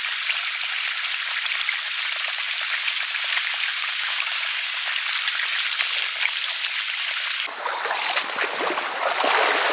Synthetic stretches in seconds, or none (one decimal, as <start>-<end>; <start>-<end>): 3.7-4.9